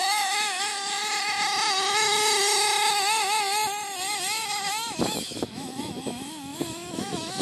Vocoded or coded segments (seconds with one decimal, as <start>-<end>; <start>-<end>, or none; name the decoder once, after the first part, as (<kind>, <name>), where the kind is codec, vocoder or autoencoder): 0.0-1.0 (autoencoder, DAC-VAE); 4.7-7.4